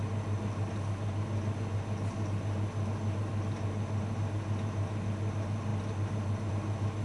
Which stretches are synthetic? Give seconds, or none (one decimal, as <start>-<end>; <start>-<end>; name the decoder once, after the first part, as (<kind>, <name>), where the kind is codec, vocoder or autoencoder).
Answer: none